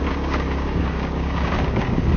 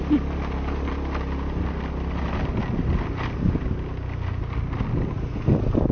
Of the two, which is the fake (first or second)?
first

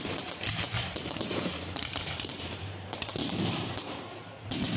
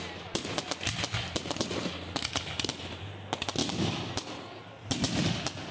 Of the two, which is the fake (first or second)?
first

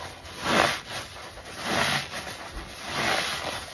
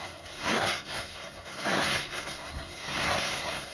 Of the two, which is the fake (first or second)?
second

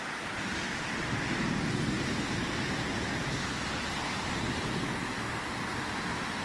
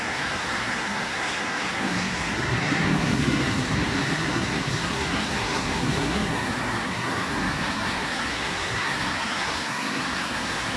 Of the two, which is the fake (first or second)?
second